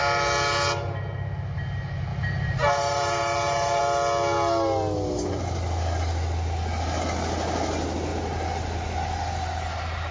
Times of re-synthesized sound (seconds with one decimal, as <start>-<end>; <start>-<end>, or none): 2.1-3.8